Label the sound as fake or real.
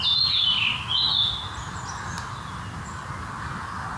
real